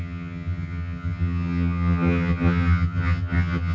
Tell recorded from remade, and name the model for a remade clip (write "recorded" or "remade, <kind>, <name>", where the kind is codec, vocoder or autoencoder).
remade, vocoder, HiFi-GAN